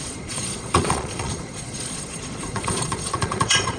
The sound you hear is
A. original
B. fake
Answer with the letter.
B